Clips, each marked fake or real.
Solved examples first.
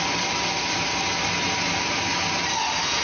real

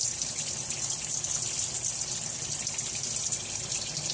real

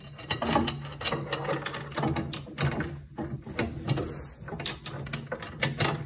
real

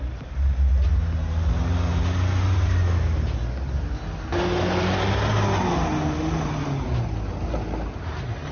real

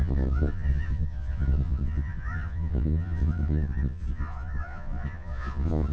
fake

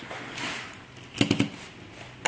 real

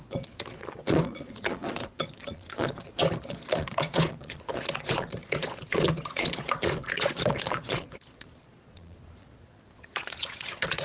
fake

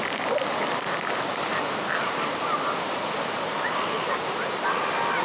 real